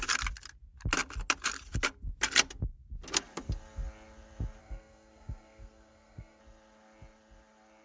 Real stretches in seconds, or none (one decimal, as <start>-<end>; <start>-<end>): 0.0-4.6; 6.4-7.8